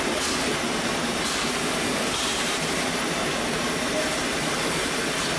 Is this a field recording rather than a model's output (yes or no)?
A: no